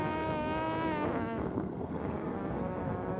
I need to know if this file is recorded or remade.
remade